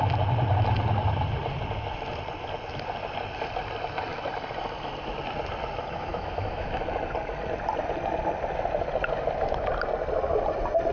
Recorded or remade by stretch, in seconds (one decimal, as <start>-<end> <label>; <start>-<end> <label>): 0.0-6.1 recorded; 6.1-6.8 remade; 6.8-10.9 recorded